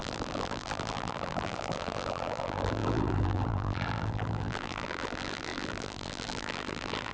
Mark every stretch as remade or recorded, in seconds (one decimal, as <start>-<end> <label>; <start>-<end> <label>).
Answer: 0.0-7.1 remade